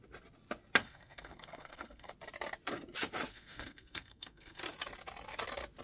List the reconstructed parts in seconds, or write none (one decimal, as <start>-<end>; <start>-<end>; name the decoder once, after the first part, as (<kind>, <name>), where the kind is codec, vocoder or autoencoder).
0.8-2.1 (codec, SNAC); 3.3-4.6